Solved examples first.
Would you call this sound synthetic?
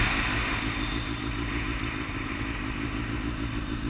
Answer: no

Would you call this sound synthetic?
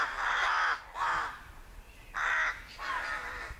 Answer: no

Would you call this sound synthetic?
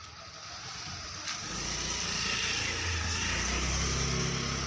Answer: no